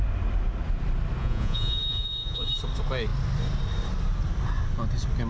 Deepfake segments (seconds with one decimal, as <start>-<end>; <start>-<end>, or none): 1.2-2.5

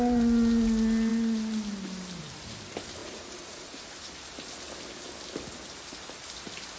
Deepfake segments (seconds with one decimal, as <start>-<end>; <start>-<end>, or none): 3.0-3.8

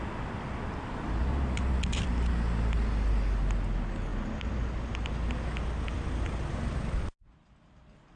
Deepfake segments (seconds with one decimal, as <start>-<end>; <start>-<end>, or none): none

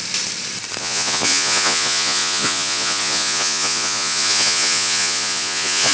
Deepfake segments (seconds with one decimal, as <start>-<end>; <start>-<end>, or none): 0.8-5.9

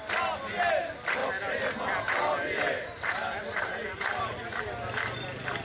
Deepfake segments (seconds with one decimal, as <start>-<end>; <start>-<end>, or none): none

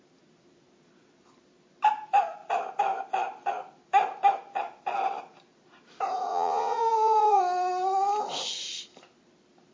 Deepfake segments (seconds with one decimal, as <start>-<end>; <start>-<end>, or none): 6.3-7.4

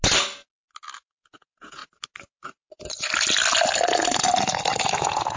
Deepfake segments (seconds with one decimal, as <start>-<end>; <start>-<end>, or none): 1.0-1.8; 5.0-5.4